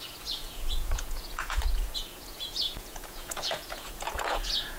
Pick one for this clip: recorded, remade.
remade